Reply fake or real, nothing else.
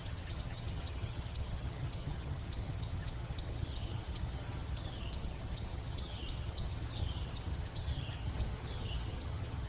fake